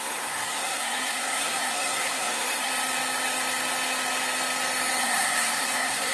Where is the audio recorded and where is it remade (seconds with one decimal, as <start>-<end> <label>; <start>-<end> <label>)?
0.0-2.7 remade; 2.7-5.0 recorded; 5.0-6.1 remade